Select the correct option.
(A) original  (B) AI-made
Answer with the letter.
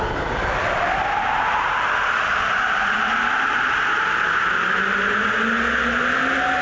A